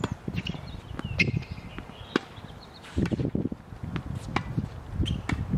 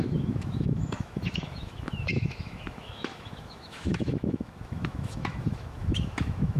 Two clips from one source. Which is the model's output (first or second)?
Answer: second